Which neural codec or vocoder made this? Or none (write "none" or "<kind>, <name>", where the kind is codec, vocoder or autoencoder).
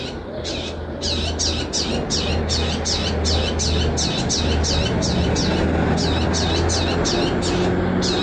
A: none